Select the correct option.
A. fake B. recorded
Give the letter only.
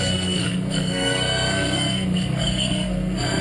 A